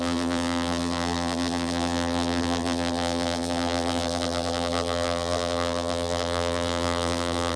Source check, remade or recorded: remade